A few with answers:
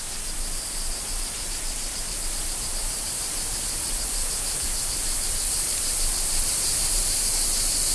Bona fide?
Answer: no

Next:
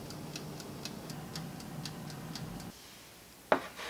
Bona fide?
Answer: yes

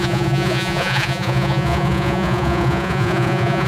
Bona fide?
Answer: no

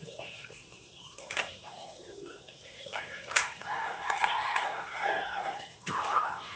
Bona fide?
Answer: no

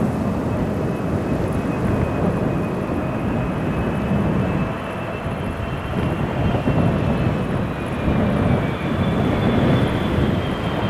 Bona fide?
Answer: yes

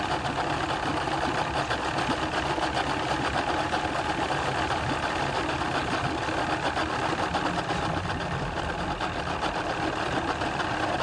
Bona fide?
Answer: yes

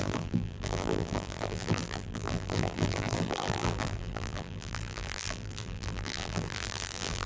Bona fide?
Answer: no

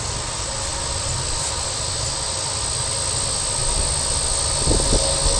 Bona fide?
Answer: yes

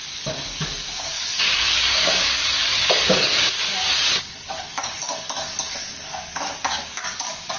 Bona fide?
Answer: no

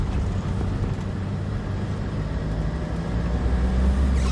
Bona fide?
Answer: yes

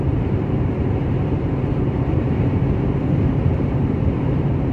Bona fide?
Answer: no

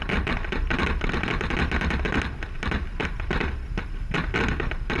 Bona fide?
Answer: yes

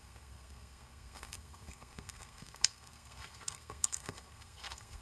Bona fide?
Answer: no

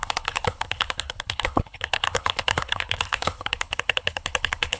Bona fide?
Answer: no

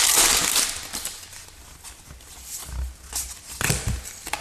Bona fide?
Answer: yes